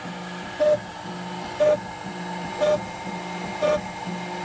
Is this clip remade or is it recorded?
recorded